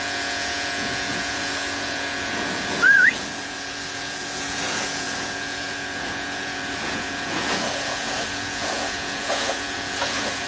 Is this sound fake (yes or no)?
yes